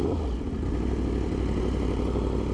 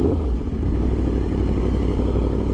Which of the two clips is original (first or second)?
first